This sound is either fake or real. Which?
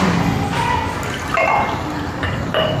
real